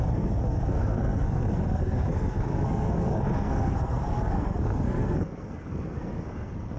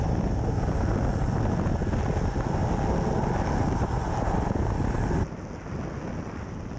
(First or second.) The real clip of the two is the second